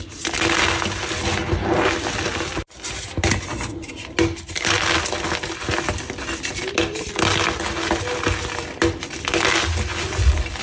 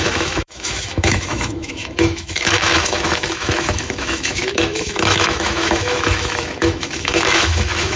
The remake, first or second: second